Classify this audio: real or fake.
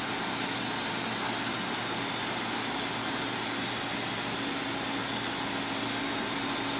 real